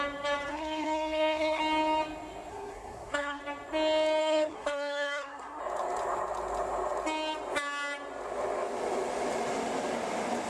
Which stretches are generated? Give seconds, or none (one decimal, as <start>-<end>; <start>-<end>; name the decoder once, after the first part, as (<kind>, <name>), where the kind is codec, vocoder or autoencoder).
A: 0.5-1.6 (codec, SNAC); 2.5-3.4; 4.2-5.6